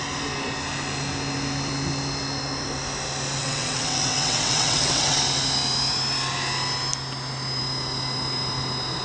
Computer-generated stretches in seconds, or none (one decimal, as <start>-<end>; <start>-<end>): 3.4-5.2